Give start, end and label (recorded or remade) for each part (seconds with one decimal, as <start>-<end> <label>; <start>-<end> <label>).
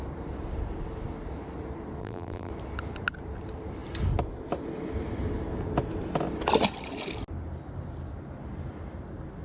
0.0-2.0 recorded; 2.0-2.5 remade; 2.5-9.4 recorded